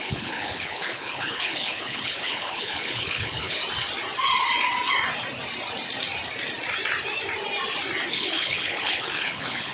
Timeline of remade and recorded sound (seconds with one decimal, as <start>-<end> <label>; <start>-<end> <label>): 0.0-3.6 remade; 3.6-8.1 recorded; 8.1-9.7 remade